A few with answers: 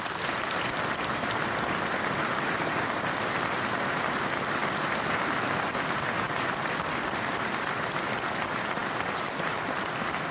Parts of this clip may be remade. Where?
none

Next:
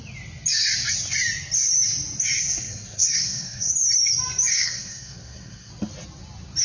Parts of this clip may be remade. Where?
2.5-3.7 (codec, SNAC); 4.5-5.7

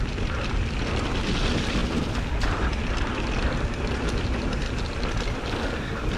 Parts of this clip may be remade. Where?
none

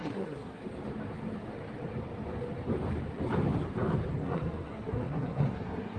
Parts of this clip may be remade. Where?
0.0-0.6 (codec, SNAC); 4.2-6.0

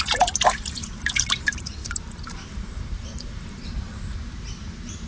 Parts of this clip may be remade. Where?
0.0-5.1 (vocoder, BigVGAN v2)